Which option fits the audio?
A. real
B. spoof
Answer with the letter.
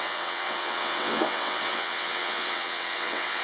B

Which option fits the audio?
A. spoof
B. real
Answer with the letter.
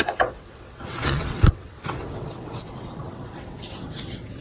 A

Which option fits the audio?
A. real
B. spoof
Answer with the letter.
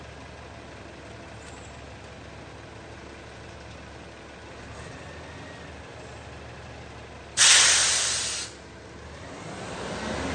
A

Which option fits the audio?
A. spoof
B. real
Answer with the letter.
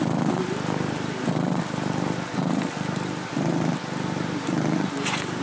B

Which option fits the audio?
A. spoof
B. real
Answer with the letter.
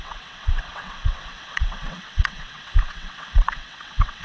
A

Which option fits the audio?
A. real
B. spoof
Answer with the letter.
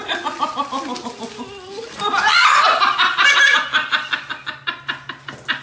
A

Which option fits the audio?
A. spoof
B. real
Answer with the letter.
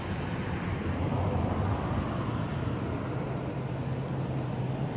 B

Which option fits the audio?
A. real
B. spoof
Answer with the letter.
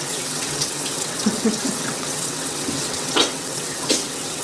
B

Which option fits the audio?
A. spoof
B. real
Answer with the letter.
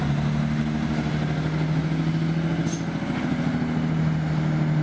B